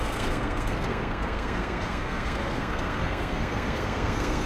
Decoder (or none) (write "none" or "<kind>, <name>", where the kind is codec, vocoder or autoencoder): codec, SNAC